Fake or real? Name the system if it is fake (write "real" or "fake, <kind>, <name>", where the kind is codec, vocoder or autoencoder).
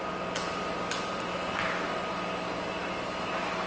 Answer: real